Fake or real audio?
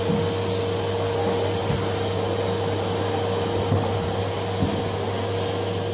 real